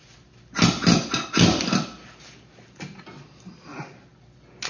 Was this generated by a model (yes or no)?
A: no